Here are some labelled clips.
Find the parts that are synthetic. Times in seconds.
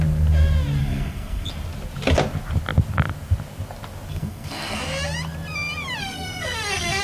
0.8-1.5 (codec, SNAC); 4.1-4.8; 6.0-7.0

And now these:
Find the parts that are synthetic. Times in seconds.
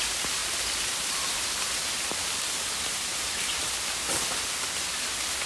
0.4-3.7 (vocoder, BigVGAN v2)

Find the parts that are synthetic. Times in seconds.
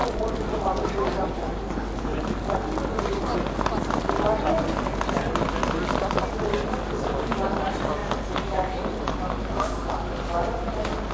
none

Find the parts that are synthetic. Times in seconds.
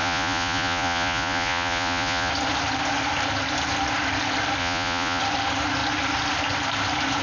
0.0-2.3 (vocoder, Vocos); 4.6-5.2